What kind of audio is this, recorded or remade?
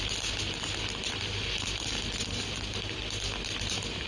recorded